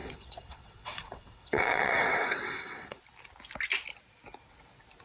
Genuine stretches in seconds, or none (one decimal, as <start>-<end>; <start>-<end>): 3.0-5.0